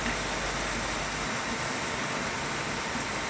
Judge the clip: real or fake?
real